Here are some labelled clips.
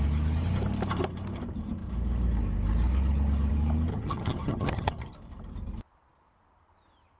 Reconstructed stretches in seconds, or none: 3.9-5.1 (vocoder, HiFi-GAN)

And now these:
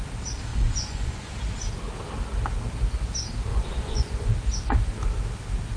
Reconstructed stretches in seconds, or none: 0.5-1.3 (vocoder, Vocos); 3.5-4.3

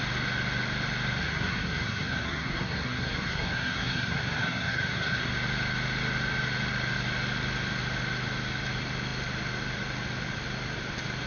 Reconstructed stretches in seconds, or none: 1.2-5.3 (codec, SNAC)

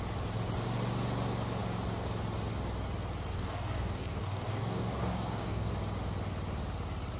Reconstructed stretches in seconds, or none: 3.3-5.7 (codec, DAC)

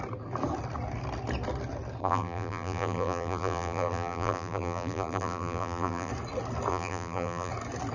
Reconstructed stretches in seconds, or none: 2.0-6.1 (vocoder, BigVGAN v2); 6.7-7.5

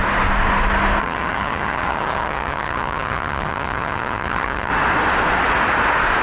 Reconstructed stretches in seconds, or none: 1.0-4.7 (vocoder, HiFi-GAN)